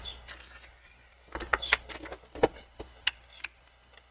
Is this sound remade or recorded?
recorded